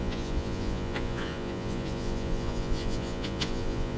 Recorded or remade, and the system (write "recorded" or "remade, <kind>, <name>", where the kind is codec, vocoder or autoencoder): remade, vocoder, Vocos